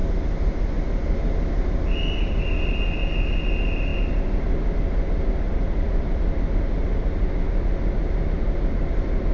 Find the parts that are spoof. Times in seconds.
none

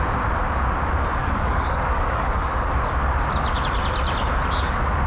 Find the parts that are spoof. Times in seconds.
1.2-2.7 (codec, DAC)

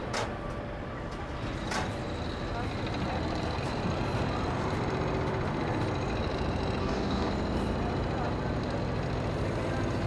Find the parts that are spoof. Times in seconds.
6.8-7.3 (codec, DAC)

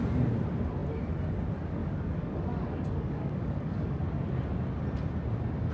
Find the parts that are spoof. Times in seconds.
1.8-4.0 (codec, DAC)